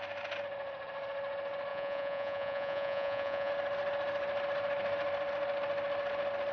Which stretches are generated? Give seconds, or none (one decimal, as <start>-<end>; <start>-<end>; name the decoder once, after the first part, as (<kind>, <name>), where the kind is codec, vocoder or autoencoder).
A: 1.7-3.5 (vocoder, Vocos)